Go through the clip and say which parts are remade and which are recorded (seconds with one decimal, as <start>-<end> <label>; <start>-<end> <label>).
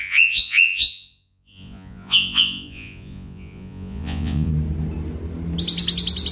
0.0-4.5 remade; 4.5-6.3 recorded